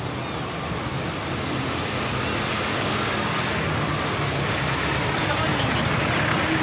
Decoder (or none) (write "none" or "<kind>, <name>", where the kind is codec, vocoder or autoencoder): none